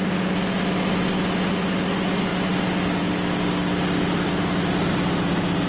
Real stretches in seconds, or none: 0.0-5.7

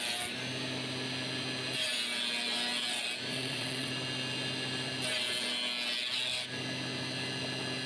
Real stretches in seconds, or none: 0.0-3.3; 3.9-7.9

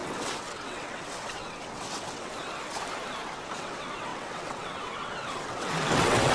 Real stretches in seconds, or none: 2.3-3.5